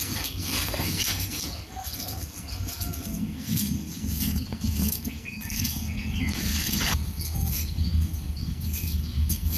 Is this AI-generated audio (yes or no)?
yes